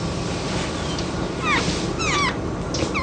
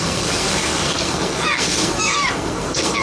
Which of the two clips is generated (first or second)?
second